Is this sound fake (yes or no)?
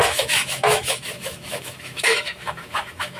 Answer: yes